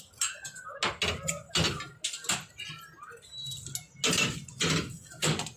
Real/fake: real